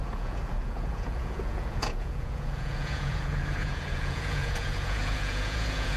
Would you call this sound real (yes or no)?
no